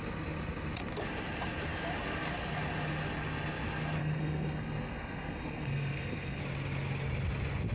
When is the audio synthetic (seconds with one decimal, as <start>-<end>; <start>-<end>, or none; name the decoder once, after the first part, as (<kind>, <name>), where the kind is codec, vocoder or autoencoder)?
4.0-6.4 (codec, SNAC)